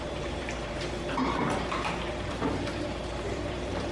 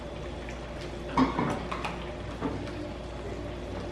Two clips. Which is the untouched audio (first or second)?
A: second